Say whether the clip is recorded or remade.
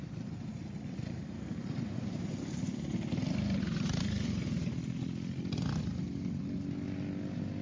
recorded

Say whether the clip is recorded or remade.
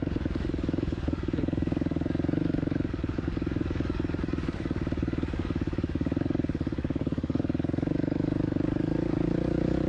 remade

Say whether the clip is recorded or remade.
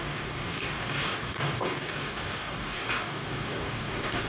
remade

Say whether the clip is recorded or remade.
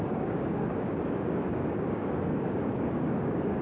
remade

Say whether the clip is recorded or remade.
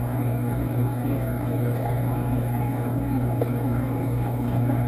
remade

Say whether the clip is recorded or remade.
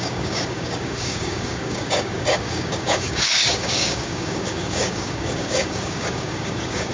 remade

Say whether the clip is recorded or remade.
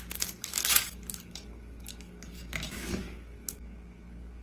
remade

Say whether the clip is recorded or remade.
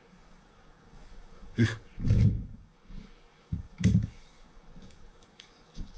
remade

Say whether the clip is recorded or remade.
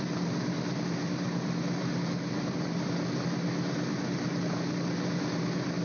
recorded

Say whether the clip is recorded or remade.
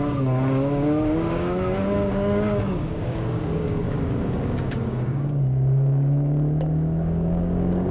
remade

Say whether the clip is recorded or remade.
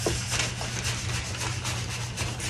recorded